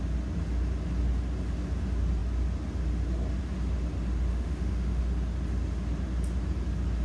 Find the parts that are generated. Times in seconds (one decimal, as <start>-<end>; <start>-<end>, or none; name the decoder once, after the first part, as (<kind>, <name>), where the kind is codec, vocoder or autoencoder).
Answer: 4.3-5.0 (autoencoder, DAC-VAE)